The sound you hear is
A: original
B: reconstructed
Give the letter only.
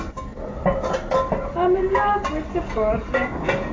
A